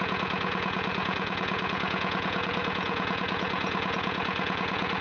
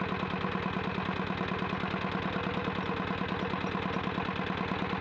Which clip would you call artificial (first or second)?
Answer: first